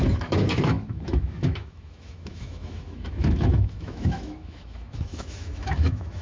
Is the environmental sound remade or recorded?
remade